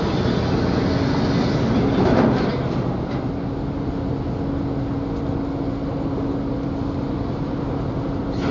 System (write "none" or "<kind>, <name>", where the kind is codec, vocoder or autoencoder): none